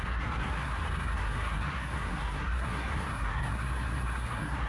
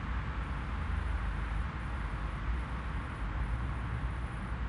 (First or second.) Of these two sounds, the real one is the second